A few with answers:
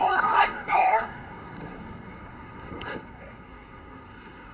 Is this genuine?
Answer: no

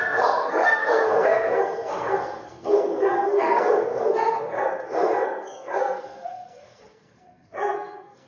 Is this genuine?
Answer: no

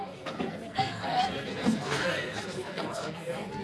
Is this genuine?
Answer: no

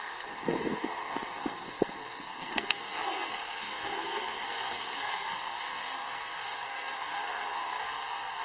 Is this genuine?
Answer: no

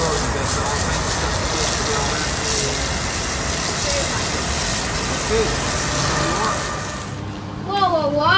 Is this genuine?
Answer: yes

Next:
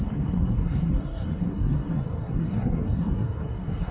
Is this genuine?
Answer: no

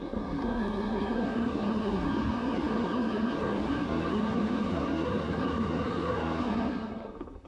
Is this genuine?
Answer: no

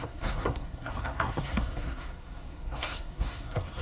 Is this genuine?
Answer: no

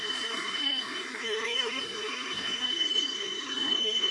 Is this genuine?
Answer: no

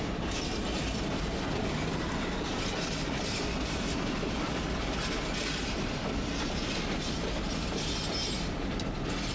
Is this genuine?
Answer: yes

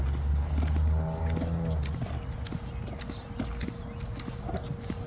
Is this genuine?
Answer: yes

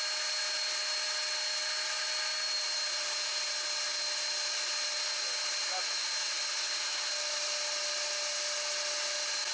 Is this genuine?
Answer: yes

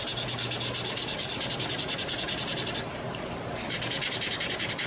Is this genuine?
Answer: yes